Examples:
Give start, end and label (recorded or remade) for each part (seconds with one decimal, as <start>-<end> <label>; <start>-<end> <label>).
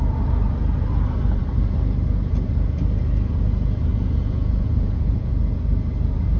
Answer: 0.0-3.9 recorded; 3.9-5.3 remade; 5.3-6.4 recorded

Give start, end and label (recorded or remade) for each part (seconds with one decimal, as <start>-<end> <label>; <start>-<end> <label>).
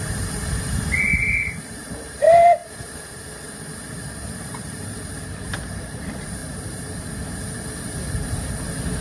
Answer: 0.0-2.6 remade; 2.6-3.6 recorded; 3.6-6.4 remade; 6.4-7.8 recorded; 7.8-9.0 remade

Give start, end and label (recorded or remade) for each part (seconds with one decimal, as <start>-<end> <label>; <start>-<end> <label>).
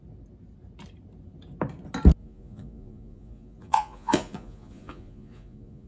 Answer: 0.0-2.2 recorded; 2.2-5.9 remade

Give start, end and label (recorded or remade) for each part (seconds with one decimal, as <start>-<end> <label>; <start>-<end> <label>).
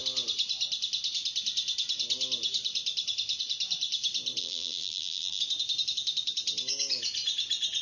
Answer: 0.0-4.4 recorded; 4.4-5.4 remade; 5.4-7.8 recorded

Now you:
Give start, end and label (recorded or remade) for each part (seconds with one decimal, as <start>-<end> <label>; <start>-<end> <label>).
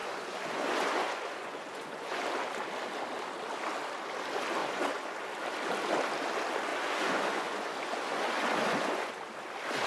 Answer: 0.0-2.2 remade; 2.2-4.6 recorded; 4.6-5.2 remade; 5.2-6.7 recorded; 6.7-9.1 remade; 9.1-9.9 recorded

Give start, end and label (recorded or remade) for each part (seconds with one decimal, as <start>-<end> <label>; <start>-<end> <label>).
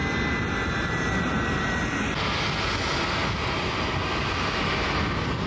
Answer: 0.0-5.5 recorded